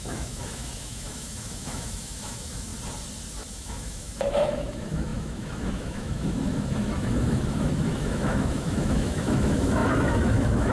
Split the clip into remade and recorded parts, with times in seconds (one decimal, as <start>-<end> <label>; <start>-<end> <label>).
0.0-2.7 remade; 2.7-3.5 recorded; 3.5-10.7 remade